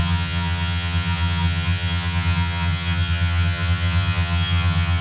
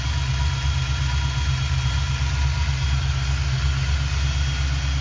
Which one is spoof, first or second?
first